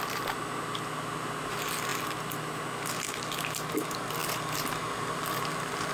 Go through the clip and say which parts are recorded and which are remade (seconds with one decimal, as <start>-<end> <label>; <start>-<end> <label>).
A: 0.0-5.9 recorded